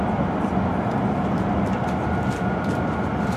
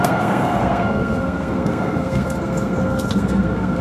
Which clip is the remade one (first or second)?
second